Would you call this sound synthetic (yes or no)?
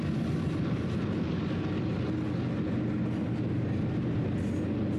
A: no